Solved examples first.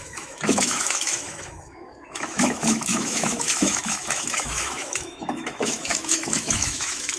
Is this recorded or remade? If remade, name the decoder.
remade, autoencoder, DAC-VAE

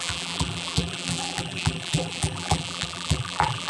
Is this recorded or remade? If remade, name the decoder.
remade, vocoder, BigVGAN v2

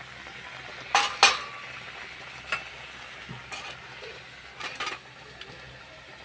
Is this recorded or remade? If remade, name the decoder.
recorded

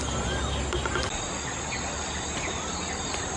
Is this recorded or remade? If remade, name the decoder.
recorded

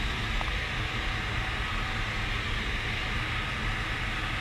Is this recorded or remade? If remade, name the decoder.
recorded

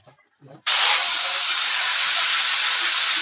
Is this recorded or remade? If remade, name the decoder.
remade, vocoder, BigVGAN v2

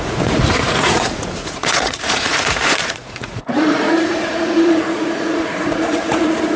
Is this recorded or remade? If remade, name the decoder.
remade, vocoder, Vocos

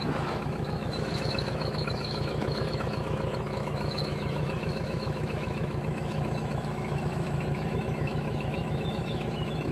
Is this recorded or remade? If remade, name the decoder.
remade, autoencoder, DAC-VAE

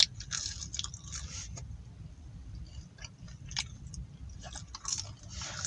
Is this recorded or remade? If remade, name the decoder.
recorded